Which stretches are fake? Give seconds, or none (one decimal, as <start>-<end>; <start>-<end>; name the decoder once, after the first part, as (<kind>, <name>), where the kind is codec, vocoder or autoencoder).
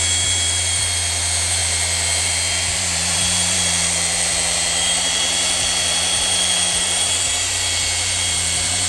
0.0-8.9 (vocoder, BigVGAN v2)